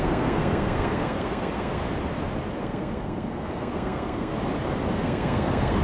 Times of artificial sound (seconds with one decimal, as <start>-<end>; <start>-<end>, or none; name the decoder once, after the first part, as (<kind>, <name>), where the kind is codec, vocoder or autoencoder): 0.0-1.8 (codec, SNAC); 2.6-4.3; 4.9-5.8